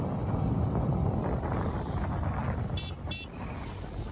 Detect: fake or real real